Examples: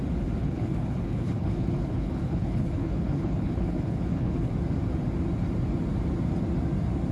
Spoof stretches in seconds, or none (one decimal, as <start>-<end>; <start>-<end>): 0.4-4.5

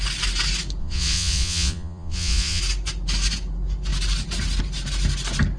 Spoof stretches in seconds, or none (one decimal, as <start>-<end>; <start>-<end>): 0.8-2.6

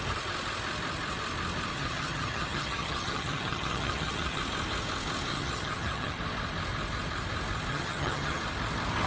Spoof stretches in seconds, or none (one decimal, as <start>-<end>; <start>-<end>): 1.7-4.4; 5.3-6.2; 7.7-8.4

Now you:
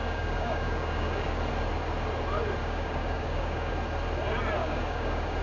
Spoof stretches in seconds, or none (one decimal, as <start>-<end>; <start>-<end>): 0.0-1.4; 2.6-3.7; 4.6-5.4

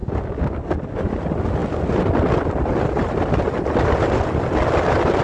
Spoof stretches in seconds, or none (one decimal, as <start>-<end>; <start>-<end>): 0.0-1.1